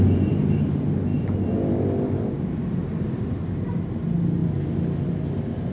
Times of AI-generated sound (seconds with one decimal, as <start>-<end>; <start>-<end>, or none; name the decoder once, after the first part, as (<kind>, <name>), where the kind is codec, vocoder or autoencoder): 1.1-3.4 (vocoder, BigVGAN v2); 4.4-5.7